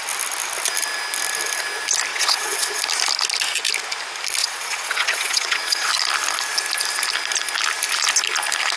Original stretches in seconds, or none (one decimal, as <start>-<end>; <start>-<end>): 0.0-2.1; 2.8-4.4; 5.9-8.8

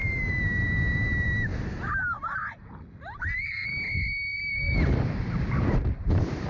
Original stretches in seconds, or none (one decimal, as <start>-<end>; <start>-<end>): 2.4-3.2; 3.7-4.4

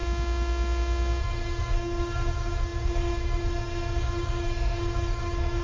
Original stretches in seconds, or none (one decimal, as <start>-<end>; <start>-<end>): 0.0-1.2

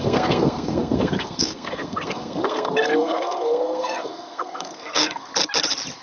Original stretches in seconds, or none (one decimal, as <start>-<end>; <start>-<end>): 5.3-6.0

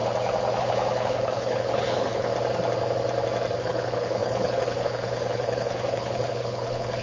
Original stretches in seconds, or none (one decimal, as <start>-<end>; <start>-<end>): 0.0-0.6; 2.3-3.6

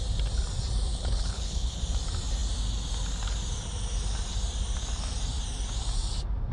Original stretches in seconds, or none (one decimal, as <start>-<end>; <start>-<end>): 0.0-0.9; 1.8-6.5